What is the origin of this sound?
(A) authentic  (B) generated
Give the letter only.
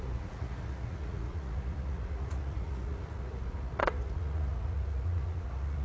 B